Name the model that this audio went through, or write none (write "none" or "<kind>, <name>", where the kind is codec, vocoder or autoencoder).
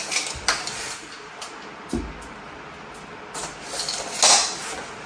none